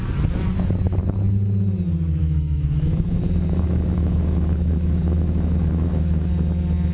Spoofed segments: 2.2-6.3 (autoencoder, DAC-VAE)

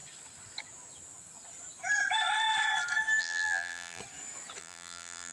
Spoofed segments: 3.2-4.0 (vocoder, BigVGAN v2); 4.6-5.3

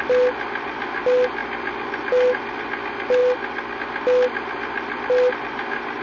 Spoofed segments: none

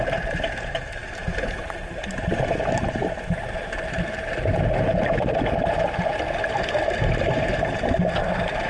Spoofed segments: 4.5-5.1 (vocoder, BigVGAN v2)